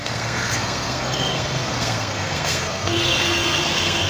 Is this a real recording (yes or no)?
no